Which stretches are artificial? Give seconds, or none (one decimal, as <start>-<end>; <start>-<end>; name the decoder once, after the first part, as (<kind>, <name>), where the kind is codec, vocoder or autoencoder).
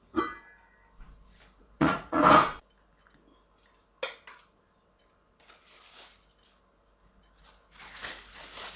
1.6-2.2 (vocoder, Vocos)